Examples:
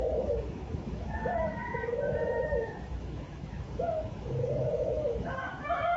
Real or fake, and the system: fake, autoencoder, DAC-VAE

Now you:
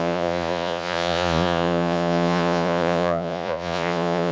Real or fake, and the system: fake, vocoder, Vocos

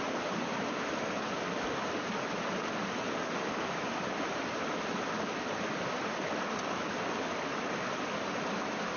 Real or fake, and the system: real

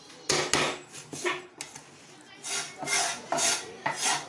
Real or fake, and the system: real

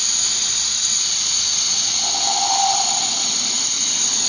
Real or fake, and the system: real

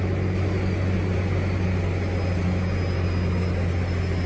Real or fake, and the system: real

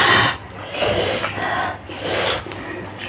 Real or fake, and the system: real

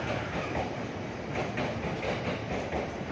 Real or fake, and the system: real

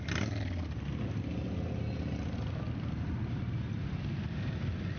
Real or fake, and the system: real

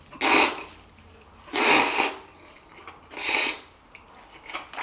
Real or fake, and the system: real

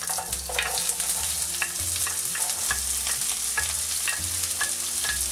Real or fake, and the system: real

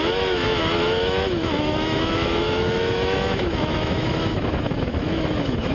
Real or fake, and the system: fake, autoencoder, DAC-VAE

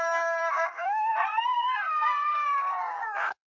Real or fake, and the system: fake, codec, SNAC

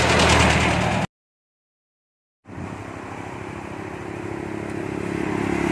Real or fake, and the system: real